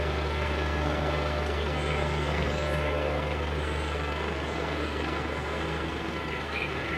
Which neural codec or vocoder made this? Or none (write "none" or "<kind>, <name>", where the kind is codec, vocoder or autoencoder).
codec, SNAC